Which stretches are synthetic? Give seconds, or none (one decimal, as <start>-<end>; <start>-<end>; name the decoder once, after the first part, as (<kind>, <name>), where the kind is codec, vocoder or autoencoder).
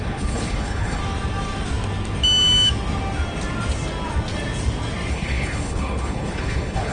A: 0.0-1.0 (codec, HILCodec); 5.1-6.9